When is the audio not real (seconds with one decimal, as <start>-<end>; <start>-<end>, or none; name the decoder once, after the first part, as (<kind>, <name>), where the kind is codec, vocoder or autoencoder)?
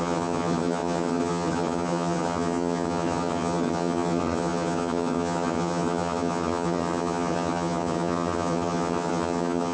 0.0-9.7 (vocoder, HiFi-GAN)